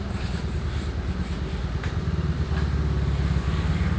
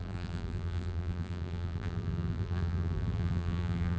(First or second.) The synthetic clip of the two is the second